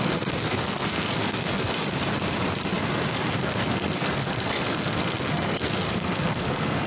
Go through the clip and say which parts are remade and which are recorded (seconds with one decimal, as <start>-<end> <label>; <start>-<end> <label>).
0.0-1.7 remade; 1.7-3.3 recorded; 3.3-6.9 remade